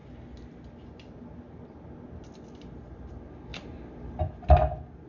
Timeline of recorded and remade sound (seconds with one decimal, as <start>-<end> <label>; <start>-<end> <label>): 0.0-5.1 recorded